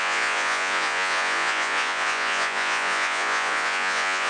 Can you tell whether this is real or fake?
fake